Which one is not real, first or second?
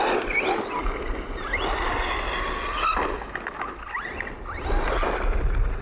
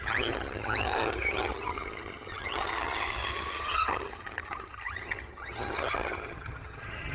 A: second